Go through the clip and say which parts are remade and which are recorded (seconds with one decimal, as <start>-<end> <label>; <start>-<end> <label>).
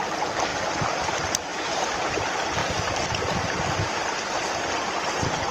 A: 0.0-1.5 recorded; 1.5-2.1 remade; 2.1-2.6 recorded; 2.6-4.1 remade; 4.1-5.5 recorded